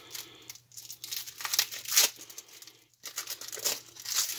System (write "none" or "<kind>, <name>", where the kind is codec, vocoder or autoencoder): none